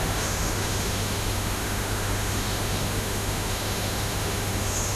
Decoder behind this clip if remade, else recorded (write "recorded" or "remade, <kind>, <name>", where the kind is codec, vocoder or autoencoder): remade, autoencoder, DAC-VAE